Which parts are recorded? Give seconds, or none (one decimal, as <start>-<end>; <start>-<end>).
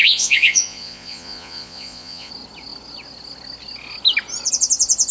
2.3-5.1